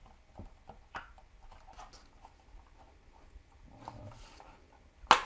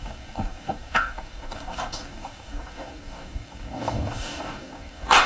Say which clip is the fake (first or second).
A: second